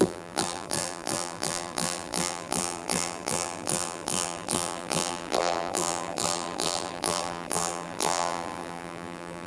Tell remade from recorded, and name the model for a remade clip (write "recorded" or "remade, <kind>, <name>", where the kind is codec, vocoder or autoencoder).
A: remade, vocoder, BigVGAN v2